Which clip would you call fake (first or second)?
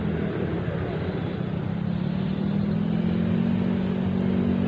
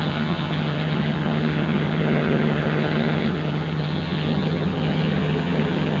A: second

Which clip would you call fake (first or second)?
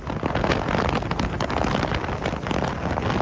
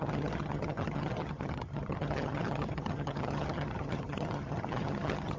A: second